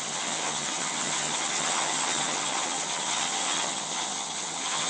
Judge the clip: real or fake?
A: fake